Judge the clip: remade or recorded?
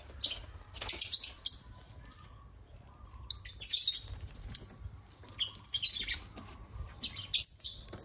recorded